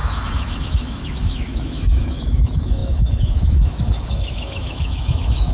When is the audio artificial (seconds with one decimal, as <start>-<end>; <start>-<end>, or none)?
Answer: 0.0-5.5